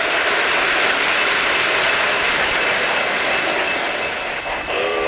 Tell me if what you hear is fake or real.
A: real